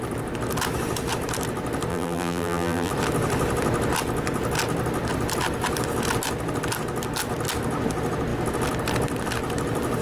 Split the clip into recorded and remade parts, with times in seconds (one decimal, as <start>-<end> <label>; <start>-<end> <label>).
0.0-1.9 recorded; 1.9-2.9 remade; 2.9-10.0 recorded